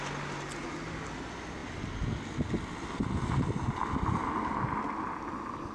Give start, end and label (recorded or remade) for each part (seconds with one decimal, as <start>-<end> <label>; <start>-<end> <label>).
0.0-5.7 recorded